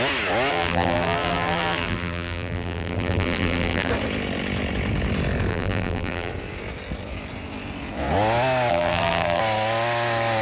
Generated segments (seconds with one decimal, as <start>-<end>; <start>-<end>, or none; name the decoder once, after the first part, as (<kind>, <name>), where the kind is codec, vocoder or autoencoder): 0.5-3.9 (vocoder, BigVGAN v2); 5.5-6.3; 8.7-9.4